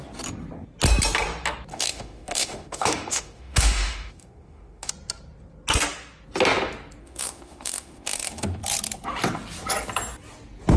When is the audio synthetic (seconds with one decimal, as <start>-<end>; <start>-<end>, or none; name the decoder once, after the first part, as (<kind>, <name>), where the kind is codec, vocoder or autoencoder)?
1.7-4.9 (autoencoder, DAC-VAE); 7.0-8.6